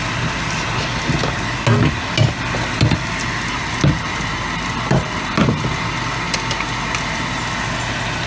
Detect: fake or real real